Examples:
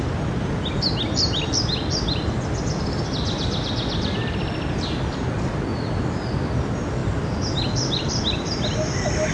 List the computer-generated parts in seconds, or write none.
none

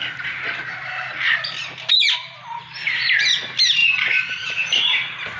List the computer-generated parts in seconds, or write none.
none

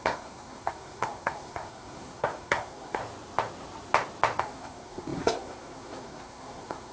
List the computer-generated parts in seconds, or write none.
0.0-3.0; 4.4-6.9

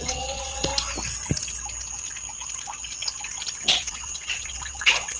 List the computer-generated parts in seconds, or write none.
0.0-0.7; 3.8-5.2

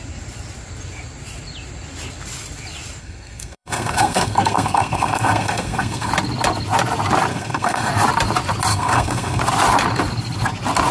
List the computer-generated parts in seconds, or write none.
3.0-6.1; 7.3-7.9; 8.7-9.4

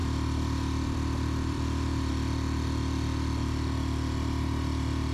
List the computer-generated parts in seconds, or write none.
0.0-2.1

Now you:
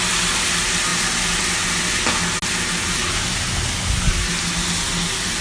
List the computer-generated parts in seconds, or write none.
none

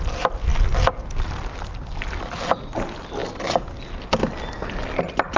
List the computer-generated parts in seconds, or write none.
none